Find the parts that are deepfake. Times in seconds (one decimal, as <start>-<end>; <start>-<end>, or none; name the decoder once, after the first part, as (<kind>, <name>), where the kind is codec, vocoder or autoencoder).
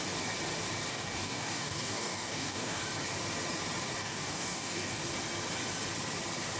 0.9-2.8 (codec, DAC); 4.0-5.0